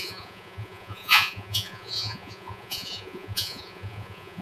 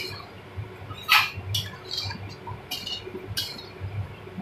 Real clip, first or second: second